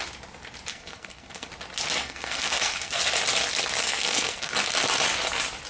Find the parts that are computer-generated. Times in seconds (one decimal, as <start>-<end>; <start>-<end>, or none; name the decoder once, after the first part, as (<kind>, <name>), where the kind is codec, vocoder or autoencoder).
0.7-1.5 (codec, SNAC); 2.0-3.0; 3.8-4.5